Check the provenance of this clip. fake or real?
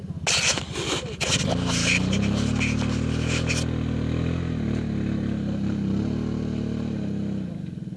real